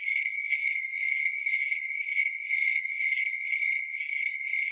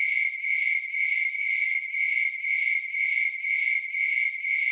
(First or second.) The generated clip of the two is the first